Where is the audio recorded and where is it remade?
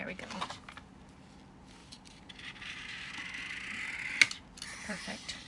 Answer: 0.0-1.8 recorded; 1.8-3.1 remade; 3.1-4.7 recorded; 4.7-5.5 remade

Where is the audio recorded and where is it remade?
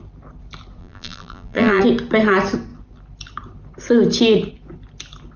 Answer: 0.0-0.8 recorded; 0.8-1.8 remade; 1.8-5.4 recorded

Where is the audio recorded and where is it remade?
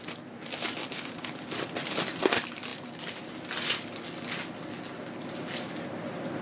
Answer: 0.0-6.4 recorded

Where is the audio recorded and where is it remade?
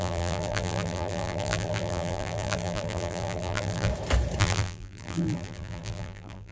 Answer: 0.0-3.9 remade; 3.9-4.4 recorded; 4.4-6.5 remade